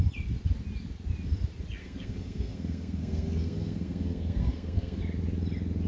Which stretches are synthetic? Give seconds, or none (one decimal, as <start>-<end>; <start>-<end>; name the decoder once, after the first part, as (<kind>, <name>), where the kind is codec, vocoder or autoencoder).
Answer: 1.8-5.0 (codec, SNAC)